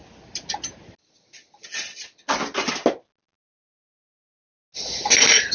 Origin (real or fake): real